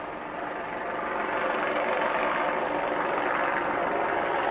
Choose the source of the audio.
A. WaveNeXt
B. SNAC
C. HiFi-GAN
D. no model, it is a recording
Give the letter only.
D